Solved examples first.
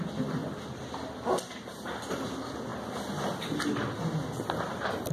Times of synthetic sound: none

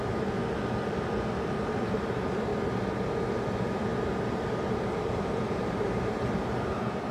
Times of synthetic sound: 0.0-0.4 (vocoder, BigVGAN v2); 1.7-2.5; 3.5-7.1

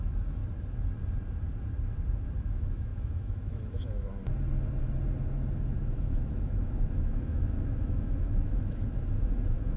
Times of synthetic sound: 0.0-0.4 (autoencoder, DAC-VAE); 2.4-4.2; 5.8-9.8

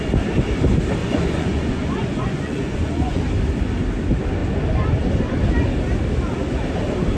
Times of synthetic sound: 1.0-3.2 (vocoder, Vocos)

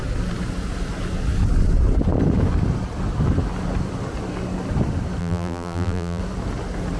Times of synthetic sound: 5.2-6.2 (vocoder, BigVGAN v2)

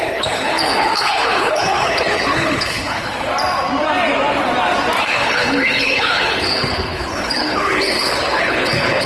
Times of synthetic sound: 0.0-3.3 (codec, HILCodec); 5.0-9.1